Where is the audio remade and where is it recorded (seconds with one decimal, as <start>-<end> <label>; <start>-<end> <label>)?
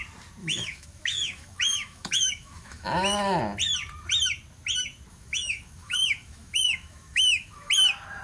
0.0-0.4 recorded; 0.4-3.4 remade; 3.4-5.1 recorded; 5.1-7.7 remade; 7.7-8.2 recorded